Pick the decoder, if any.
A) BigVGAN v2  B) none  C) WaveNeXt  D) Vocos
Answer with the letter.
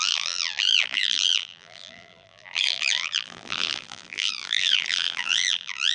A